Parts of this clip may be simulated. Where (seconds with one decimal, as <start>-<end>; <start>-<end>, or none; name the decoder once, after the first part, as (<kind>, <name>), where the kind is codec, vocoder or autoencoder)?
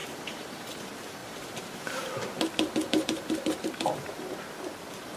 0.0-0.7 (vocoder, BigVGAN v2); 1.2-4.3